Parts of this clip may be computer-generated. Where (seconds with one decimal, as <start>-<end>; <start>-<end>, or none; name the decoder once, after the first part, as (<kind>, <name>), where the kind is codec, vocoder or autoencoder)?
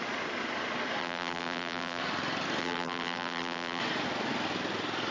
1.0-2.0 (vocoder, BigVGAN v2); 2.6-3.8